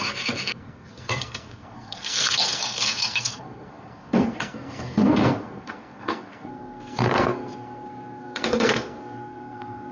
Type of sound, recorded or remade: remade